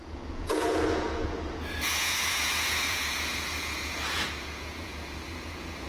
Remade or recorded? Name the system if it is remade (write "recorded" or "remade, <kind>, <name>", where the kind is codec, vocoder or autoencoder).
remade, vocoder, Vocos